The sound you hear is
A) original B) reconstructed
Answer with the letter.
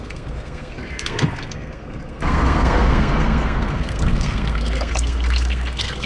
B